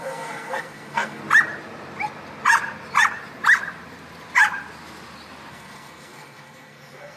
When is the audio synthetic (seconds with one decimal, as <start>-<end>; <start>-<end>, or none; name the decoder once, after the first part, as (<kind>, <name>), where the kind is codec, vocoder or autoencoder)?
0.0-1.2 (codec, SNAC); 5.5-7.2